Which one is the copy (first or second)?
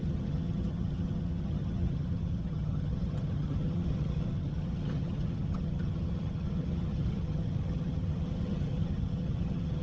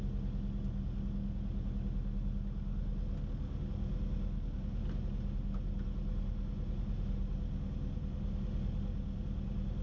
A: first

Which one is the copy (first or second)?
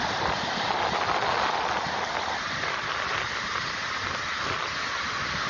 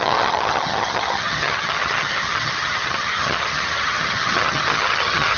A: second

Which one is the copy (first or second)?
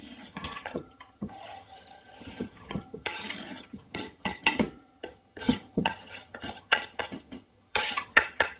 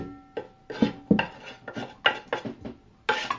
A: first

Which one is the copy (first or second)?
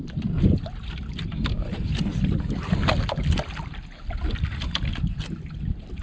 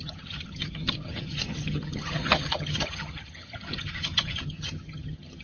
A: second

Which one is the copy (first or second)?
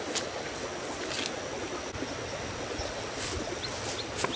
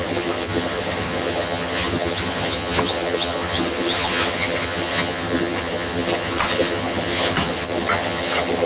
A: second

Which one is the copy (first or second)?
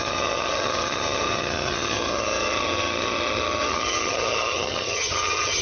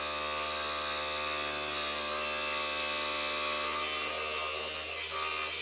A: first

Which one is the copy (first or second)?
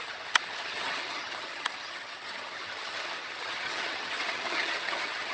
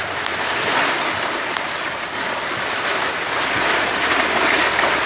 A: first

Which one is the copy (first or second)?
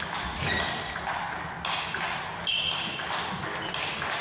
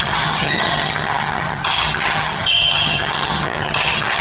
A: second